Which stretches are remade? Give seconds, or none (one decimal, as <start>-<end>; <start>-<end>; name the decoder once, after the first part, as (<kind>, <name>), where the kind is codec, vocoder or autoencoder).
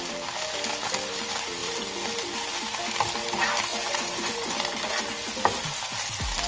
3.7-5.0 (vocoder, Vocos)